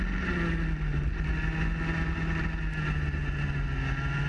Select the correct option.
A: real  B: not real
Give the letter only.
A